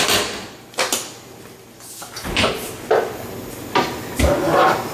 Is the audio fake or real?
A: real